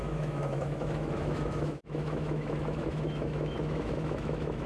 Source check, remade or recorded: remade